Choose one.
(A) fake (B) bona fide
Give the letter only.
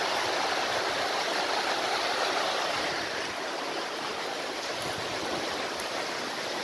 B